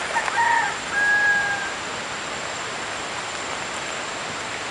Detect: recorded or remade recorded